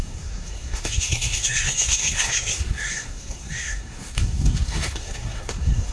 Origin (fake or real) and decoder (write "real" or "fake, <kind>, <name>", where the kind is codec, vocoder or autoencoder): fake, codec, SNAC